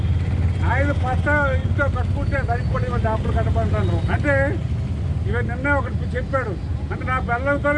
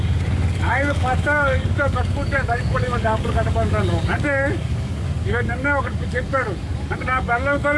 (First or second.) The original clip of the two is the first